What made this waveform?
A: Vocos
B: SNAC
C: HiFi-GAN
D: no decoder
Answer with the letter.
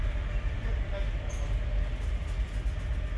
D